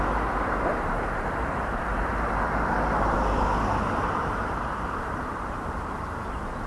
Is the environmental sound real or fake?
fake